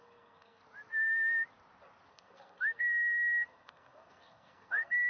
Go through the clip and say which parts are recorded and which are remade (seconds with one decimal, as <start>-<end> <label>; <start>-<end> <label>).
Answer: 0.0-0.6 remade; 0.6-2.1 recorded; 2.1-5.1 remade